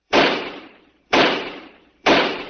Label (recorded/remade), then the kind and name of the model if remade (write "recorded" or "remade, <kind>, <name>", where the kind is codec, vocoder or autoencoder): remade, vocoder, BigVGAN v2